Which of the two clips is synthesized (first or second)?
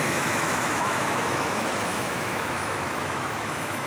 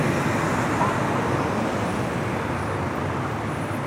first